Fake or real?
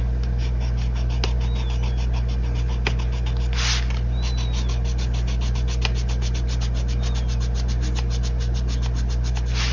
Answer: real